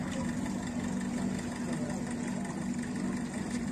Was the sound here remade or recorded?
recorded